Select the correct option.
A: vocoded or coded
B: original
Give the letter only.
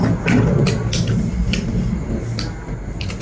B